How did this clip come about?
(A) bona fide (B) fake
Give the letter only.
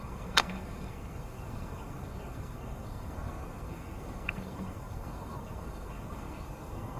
B